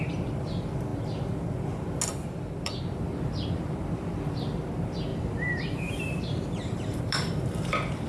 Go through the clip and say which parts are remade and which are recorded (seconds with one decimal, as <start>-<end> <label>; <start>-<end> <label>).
0.0-5.1 recorded; 5.1-7.0 remade; 7.0-8.1 recorded

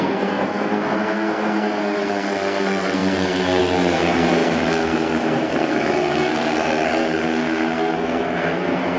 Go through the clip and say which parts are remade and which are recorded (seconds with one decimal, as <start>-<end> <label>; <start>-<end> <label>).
0.0-9.0 remade

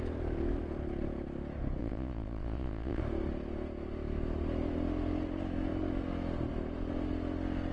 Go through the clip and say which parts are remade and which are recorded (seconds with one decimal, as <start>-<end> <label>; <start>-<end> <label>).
0.0-1.8 recorded; 1.8-3.0 remade; 3.0-7.7 recorded

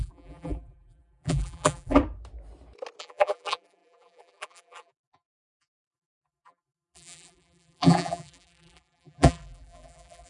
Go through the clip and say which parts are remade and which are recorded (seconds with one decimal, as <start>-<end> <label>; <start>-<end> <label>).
0.0-2.0 remade; 2.0-3.0 recorded; 3.0-10.3 remade

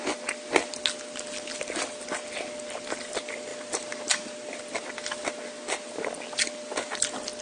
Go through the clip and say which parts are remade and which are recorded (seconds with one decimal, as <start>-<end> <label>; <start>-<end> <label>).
0.0-3.5 recorded; 3.5-5.2 remade; 5.2-7.4 recorded

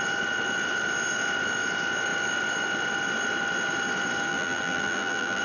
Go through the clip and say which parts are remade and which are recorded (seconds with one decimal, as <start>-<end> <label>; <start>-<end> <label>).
0.0-4.3 recorded; 4.3-5.4 remade